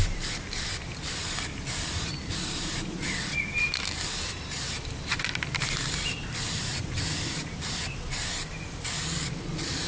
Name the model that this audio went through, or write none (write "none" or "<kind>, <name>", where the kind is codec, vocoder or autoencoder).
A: vocoder, BigVGAN v2